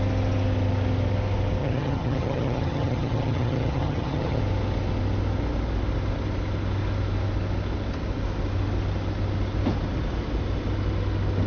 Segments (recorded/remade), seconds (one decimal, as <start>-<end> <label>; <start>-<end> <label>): 0.0-1.6 recorded; 1.6-4.4 remade; 4.4-11.5 recorded